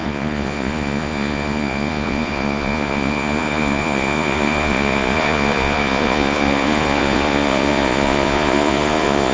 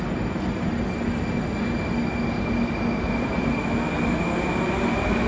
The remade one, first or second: first